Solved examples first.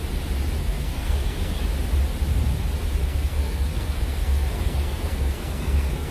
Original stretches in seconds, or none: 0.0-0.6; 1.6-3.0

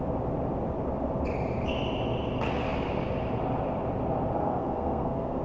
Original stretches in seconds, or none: 0.0-4.4

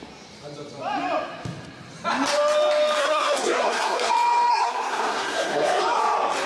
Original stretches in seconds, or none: 0.0-3.0; 4.1-4.5; 5.8-6.5

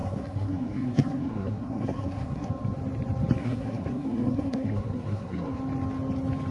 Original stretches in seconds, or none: 2.5-3.4; 5.6-6.5

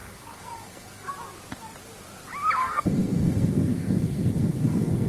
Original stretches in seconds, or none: 1.1-2.6

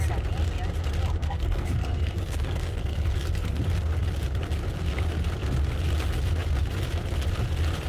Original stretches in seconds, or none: 0.0-1.2; 3.6-7.9

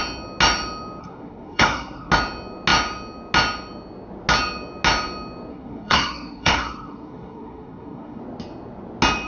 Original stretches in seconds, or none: 0.0-1.0; 2.1-5.5; 8.2-9.3